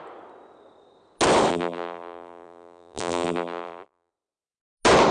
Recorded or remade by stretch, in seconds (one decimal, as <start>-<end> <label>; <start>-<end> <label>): 0.0-1.5 recorded; 1.5-4.1 remade; 4.1-5.1 recorded